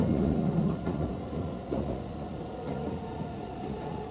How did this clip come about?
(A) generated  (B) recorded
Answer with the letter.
A